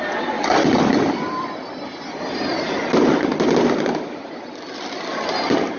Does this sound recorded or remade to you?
recorded